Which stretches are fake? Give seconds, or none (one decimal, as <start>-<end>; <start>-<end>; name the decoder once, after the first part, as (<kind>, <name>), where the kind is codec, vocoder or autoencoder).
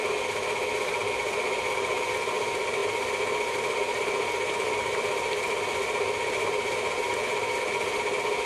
none